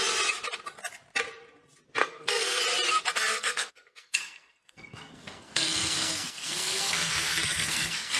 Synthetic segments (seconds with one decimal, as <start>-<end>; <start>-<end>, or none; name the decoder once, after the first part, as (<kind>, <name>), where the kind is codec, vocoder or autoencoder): 2.0-2.6 (codec, SNAC); 3.3-8.2